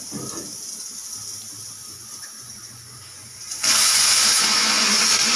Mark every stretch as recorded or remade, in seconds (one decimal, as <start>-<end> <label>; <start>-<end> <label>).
0.0-1.8 recorded; 1.8-5.0 remade; 5.0-5.4 recorded